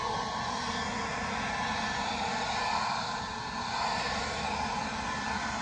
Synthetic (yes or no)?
no